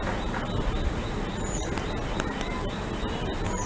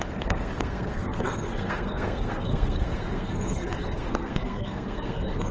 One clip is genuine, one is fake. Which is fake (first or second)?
second